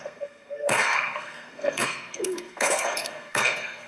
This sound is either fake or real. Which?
fake